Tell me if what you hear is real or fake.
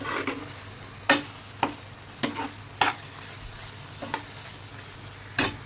real